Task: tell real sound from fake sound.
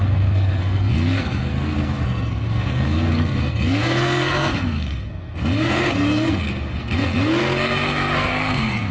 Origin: fake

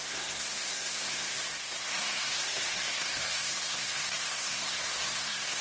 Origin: fake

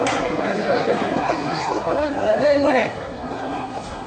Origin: fake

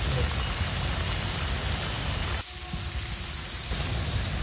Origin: real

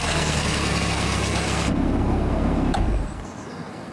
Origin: fake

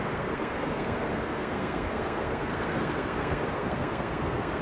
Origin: fake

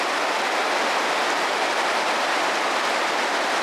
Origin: real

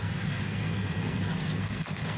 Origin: fake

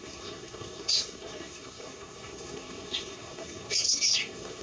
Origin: fake